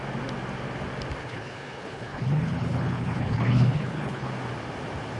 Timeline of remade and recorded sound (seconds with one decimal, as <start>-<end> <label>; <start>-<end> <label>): 0.0-1.2 recorded; 1.2-4.3 remade; 4.3-5.2 recorded